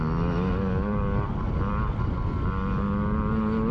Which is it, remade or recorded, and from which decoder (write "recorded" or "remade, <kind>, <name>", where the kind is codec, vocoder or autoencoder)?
recorded